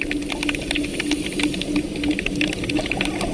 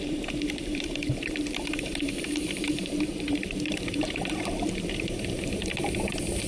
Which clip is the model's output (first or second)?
second